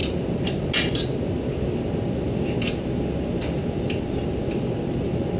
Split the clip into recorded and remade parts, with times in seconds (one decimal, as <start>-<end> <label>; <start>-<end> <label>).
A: 0.0-5.4 recorded